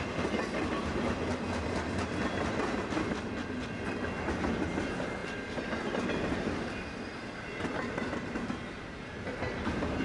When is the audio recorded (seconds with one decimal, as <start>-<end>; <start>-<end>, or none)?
0.0-5.2